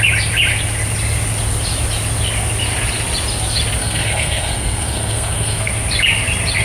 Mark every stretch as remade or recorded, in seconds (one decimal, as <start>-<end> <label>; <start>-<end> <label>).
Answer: 0.0-3.8 recorded; 3.8-5.7 remade; 5.7-6.6 recorded